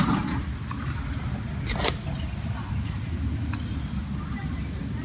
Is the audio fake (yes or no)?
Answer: no